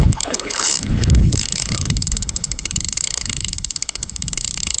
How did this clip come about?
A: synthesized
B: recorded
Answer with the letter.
A